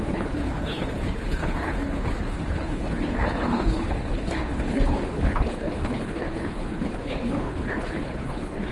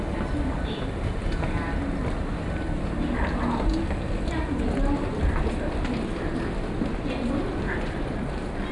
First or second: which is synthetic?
first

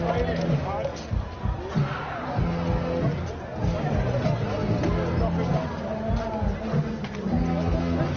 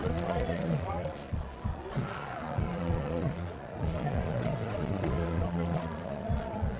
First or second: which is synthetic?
second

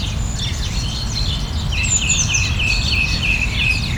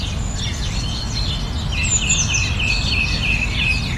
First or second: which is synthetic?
first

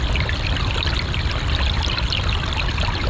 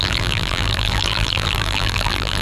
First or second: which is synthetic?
second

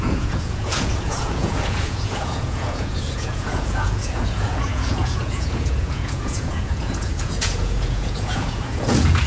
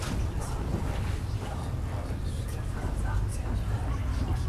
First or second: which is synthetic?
first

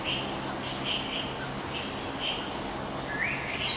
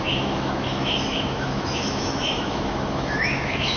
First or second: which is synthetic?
second